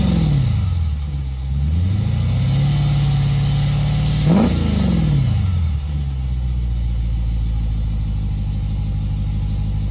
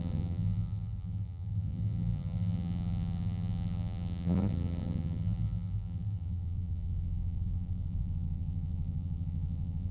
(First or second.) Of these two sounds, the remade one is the second